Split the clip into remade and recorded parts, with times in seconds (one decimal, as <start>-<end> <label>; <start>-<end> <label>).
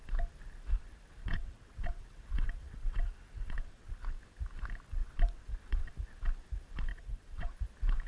0.0-1.2 recorded; 1.2-3.9 remade; 3.9-5.0 recorded; 5.0-5.9 remade; 5.9-6.9 recorded; 6.9-7.5 remade; 7.5-8.1 recorded